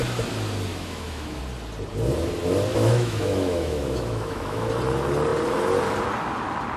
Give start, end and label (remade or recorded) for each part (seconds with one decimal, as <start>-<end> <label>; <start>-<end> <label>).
0.0-0.7 recorded; 0.7-1.4 remade; 1.4-2.7 recorded; 2.7-4.7 remade; 4.7-6.8 recorded